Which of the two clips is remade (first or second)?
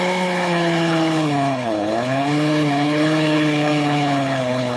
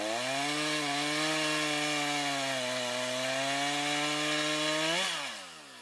first